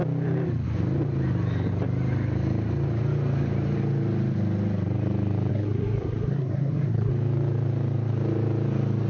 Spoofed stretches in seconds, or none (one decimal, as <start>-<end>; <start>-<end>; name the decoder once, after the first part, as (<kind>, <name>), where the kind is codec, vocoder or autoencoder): 5.5-7.1 (codec, SNAC)